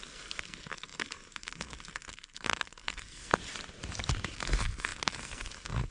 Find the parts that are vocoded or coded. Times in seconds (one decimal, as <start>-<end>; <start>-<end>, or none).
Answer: 0.0-3.4; 4.2-5.9